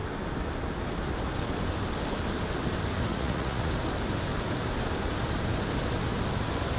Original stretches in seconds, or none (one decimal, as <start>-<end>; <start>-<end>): 0.0-3.1; 3.7-6.8